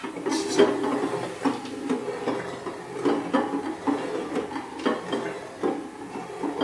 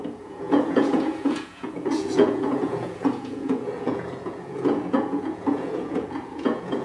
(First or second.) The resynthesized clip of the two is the second